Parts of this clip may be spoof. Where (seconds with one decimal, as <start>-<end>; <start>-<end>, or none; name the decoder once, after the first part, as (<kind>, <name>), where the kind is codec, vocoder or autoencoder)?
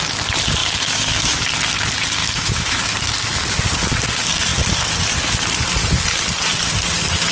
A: 0.6-1.4 (autoencoder, DAC-VAE); 2.2-2.8